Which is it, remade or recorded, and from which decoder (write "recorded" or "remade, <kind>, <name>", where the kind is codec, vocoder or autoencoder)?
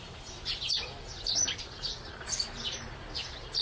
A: recorded